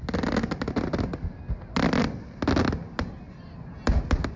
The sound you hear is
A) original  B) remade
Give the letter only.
A